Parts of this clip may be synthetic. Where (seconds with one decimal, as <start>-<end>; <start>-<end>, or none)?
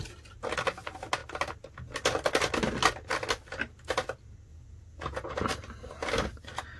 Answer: 4.5-5.5